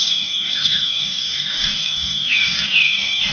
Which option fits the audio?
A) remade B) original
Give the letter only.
A